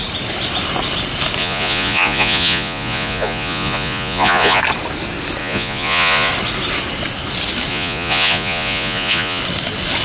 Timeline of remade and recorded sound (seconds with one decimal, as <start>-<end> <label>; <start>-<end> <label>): 0.0-1.4 recorded; 1.4-4.6 remade; 4.6-5.4 recorded; 5.4-6.3 remade; 6.3-7.7 recorded; 7.7-9.4 remade; 9.4-10.0 recorded